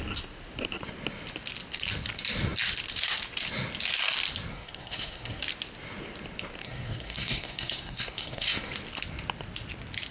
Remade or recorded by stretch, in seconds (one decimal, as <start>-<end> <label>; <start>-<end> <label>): 0.0-4.5 recorded; 4.5-5.4 remade; 5.4-6.6 recorded; 6.6-8.7 remade; 8.7-10.1 recorded